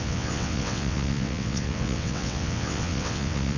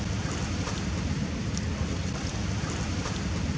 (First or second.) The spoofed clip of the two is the first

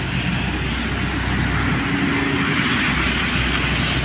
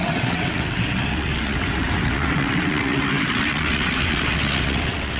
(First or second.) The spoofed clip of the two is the second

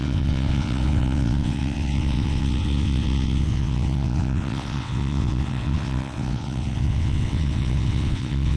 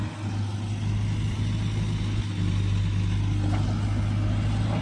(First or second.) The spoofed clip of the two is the first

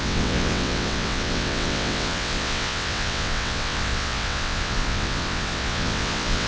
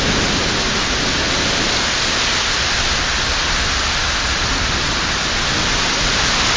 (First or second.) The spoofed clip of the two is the first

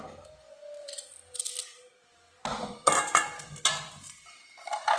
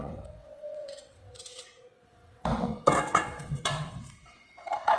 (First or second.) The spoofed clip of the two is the second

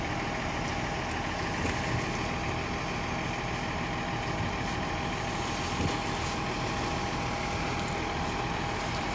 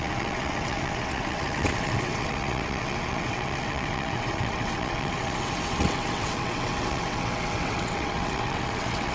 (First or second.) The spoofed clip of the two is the second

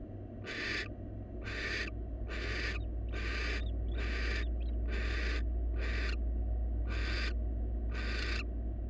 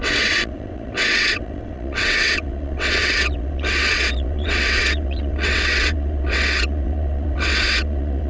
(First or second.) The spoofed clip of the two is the second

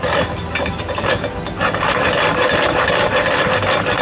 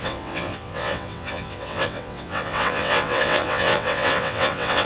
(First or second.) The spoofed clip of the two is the second